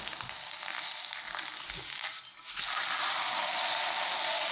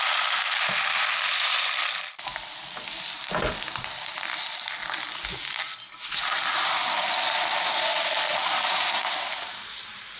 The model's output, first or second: second